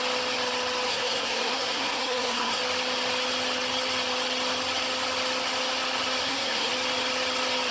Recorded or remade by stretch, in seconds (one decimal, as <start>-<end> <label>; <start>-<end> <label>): 0.0-0.9 recorded; 0.9-2.6 remade; 2.6-6.2 recorded; 6.2-6.7 remade; 6.7-7.7 recorded